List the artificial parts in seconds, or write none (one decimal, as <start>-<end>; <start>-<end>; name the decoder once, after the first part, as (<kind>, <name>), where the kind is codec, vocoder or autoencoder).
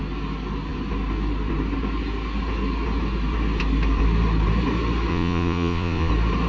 5.1-6.1 (vocoder, Vocos)